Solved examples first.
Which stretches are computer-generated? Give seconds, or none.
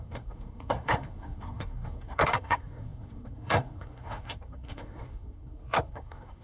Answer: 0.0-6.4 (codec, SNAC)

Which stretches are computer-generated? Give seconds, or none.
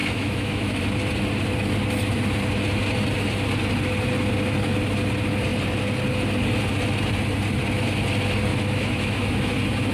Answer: 0.0-0.8 (autoencoder, DAC-VAE); 8.5-9.5